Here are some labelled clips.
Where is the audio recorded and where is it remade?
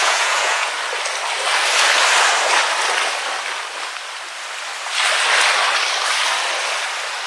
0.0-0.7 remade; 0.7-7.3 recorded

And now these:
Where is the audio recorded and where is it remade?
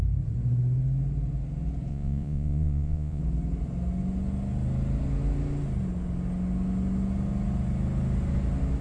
0.0-1.9 recorded; 1.9-3.2 remade; 3.2-8.8 recorded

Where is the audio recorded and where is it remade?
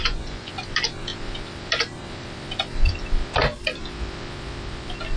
0.0-0.5 remade; 0.5-5.2 recorded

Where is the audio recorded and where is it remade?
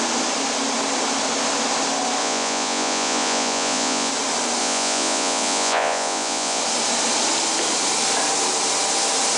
0.0-2.2 recorded; 2.2-4.1 remade; 4.1-4.6 recorded; 4.6-6.6 remade; 6.6-9.4 recorded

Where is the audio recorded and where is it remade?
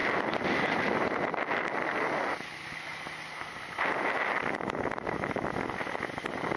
0.0-6.6 recorded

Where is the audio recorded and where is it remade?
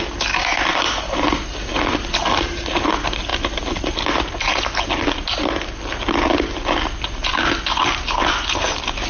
0.0-9.1 recorded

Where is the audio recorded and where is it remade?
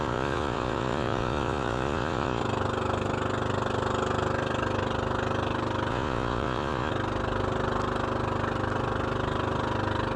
0.0-2.4 remade; 2.4-5.9 recorded; 5.9-6.9 remade; 6.9-10.2 recorded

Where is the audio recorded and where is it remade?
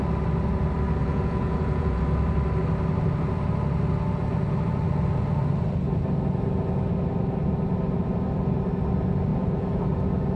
0.0-1.0 recorded; 1.0-2.0 remade; 2.0-9.3 recorded; 9.3-9.8 remade; 9.8-10.4 recorded